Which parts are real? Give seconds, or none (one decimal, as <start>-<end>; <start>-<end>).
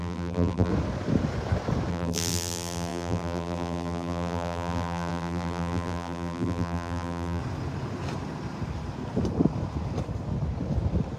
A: 0.7-1.9; 7.4-11.2